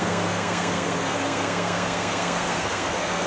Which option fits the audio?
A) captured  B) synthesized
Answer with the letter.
B